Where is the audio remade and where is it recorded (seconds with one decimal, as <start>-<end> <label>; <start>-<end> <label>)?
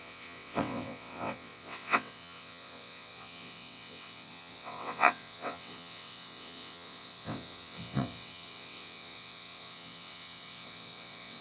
0.0-11.4 remade